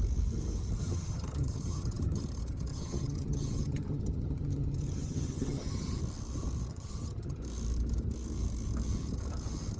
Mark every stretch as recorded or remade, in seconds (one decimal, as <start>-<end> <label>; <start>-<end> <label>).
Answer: 0.0-0.8 recorded; 0.8-2.2 remade; 2.2-2.7 recorded; 2.7-6.0 remade; 6.0-6.7 recorded; 6.7-7.4 remade; 7.4-9.8 recorded